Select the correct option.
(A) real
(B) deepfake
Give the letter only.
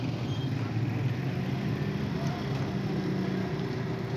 A